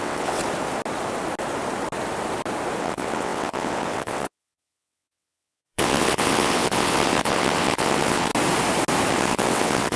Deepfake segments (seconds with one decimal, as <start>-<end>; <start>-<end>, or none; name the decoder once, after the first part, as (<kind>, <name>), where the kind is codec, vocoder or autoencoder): 0.0-0.4 (vocoder, WaveNeXt); 2.8-8.3; 9.1-10.0